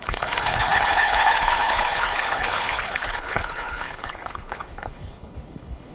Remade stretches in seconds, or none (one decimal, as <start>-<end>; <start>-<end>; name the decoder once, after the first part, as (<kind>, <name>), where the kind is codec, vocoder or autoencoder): 0.0-5.9 (codec, HILCodec)